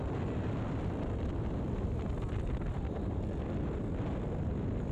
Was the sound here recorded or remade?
recorded